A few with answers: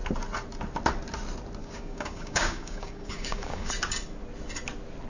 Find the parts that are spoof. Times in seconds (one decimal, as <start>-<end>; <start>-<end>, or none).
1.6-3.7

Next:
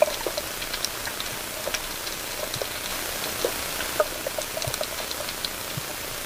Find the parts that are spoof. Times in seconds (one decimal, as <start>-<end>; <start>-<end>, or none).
none

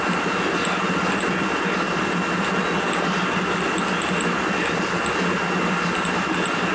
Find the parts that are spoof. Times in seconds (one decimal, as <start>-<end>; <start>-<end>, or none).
none

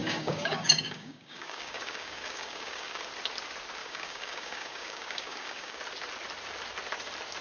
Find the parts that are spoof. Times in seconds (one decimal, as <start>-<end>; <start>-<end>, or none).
0.0-3.1; 3.8-5.8

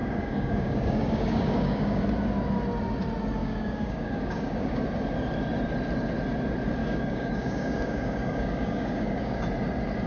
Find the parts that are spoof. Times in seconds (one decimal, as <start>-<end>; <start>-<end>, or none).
0.0-2.0; 3.4-4.8; 6.8-9.4

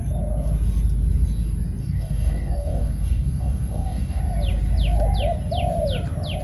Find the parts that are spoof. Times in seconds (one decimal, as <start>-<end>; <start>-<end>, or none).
1.8-4.2

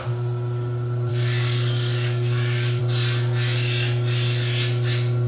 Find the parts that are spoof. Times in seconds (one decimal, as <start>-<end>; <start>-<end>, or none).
1.1-2.8

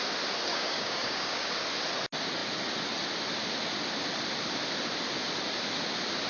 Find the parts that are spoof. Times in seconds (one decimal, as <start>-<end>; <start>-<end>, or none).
0.5-1.5